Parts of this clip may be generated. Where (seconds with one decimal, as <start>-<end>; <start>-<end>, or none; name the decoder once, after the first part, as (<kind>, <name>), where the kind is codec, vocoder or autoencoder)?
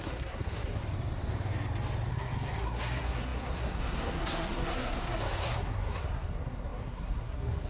0.0-0.8 (codec, SNAC); 2.1-7.7